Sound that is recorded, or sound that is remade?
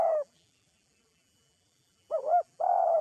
remade